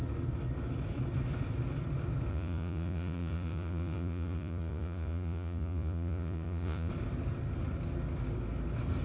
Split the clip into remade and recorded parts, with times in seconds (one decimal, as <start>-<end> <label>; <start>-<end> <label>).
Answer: 0.0-2.3 recorded; 2.3-6.9 remade; 6.9-9.0 recorded